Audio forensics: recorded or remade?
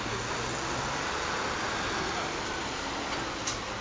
recorded